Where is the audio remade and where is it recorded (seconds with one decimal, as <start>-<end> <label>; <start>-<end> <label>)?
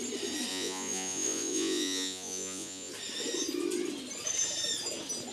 0.0-0.5 recorded; 0.5-2.9 remade; 2.9-5.3 recorded